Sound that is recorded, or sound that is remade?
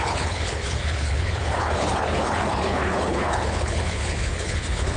remade